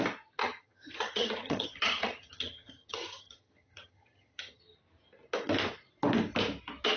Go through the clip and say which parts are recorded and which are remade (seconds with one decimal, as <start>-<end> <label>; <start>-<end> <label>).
0.0-0.4 recorded; 0.4-4.6 remade; 4.6-7.0 recorded